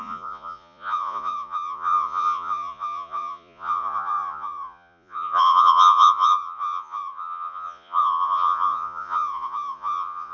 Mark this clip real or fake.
fake